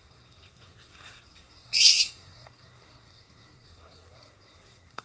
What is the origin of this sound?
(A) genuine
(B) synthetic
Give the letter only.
B